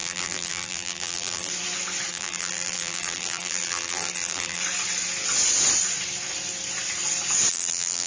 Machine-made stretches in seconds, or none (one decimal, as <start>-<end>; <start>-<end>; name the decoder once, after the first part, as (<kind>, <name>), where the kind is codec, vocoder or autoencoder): 0.0-1.5 (vocoder, BigVGAN v2); 2.1-4.6; 7.5-8.1